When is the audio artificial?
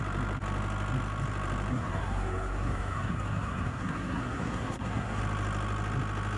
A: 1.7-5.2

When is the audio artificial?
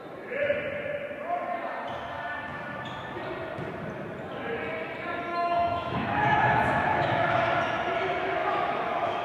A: 5.3-7.4; 8.4-9.2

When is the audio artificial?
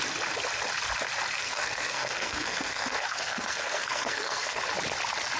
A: 1.4-4.6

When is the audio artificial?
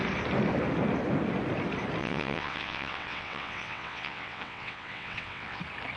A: 2.0-5.6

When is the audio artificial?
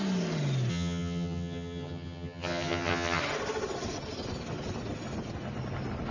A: 0.7-3.2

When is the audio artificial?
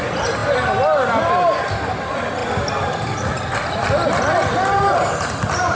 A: none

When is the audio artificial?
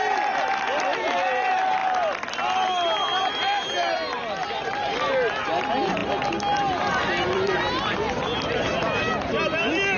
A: none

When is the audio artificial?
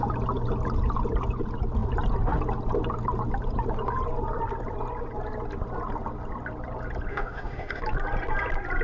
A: 7.1-7.8